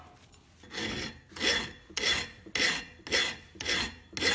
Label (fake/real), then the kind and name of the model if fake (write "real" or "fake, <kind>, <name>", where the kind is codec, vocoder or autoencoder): real